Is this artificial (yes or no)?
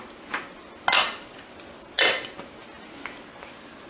no